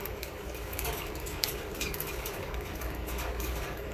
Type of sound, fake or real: fake